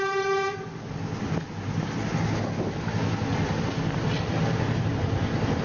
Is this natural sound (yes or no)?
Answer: yes